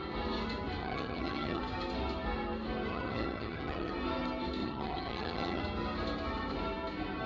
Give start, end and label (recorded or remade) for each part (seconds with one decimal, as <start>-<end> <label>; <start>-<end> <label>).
0.0-0.8 recorded; 0.8-1.6 remade; 1.6-2.9 recorded; 2.9-3.9 remade; 3.9-4.6 recorded; 4.6-5.6 remade; 5.6-7.3 recorded